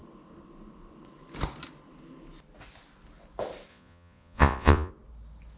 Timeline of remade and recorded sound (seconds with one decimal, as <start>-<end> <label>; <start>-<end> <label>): 0.0-3.7 recorded; 3.7-4.9 remade; 4.9-5.6 recorded